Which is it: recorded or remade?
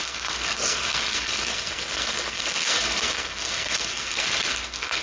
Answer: remade